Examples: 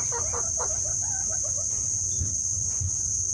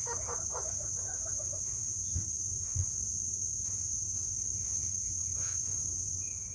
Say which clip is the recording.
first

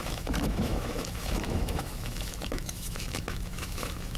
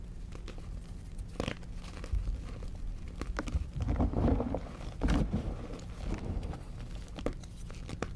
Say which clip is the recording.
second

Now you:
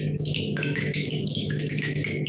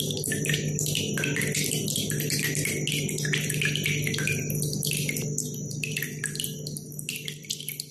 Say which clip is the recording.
second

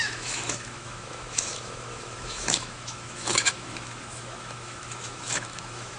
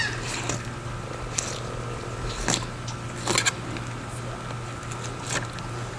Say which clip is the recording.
second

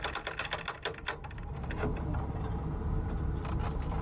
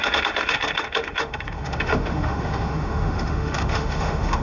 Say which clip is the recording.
first